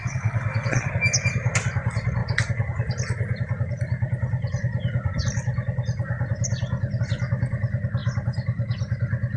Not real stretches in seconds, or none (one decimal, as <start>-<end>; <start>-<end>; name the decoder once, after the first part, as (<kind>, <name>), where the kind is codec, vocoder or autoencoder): 0.0-0.9 (vocoder, WaveNeXt)